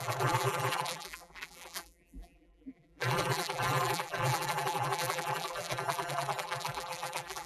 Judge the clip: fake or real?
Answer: fake